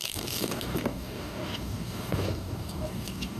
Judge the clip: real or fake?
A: fake